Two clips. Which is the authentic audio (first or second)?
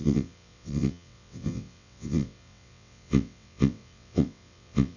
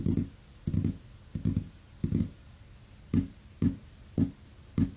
second